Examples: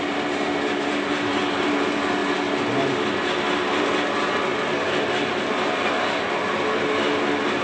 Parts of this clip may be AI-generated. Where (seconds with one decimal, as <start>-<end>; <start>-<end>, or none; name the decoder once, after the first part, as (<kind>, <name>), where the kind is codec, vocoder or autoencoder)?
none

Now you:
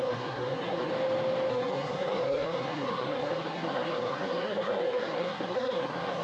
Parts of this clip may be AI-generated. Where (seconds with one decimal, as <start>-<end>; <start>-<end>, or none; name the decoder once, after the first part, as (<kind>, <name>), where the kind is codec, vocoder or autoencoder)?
0.0-0.9 (codec, SNAC); 1.5-6.2

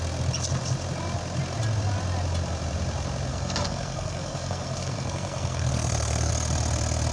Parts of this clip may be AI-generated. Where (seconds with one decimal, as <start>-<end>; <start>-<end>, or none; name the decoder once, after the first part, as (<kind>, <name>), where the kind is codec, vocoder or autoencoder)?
3.3-6.3 (codec, SNAC)

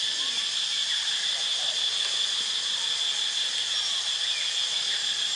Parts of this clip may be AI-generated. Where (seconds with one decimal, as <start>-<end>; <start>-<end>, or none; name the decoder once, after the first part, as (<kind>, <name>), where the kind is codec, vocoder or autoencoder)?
0.0-1.9 (vocoder, BigVGAN v2); 4.8-5.4

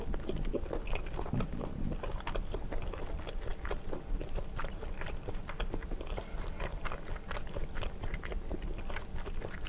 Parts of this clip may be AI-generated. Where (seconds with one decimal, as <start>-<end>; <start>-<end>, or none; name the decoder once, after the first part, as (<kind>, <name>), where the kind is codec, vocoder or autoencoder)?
none